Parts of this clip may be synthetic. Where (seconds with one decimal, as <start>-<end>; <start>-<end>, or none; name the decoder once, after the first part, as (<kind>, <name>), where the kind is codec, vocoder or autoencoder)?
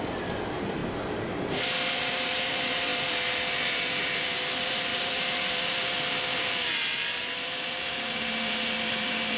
0.0-0.8 (vocoder, BigVGAN v2); 1.9-9.4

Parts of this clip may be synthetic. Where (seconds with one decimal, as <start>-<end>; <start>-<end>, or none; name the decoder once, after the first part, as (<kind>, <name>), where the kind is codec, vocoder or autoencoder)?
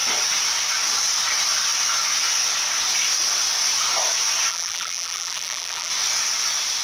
4.5-5.9 (vocoder, BigVGAN v2)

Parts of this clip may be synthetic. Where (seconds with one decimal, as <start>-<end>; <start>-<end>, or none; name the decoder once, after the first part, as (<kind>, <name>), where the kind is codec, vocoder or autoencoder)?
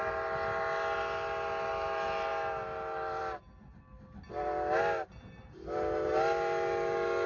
none